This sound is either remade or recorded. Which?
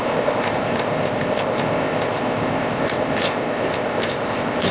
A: remade